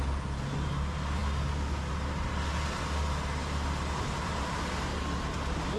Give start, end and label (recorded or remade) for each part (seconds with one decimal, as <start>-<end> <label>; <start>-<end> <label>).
0.0-5.8 recorded